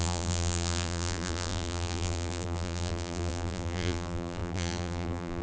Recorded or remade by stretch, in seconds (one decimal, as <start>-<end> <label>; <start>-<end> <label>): 0.0-5.4 remade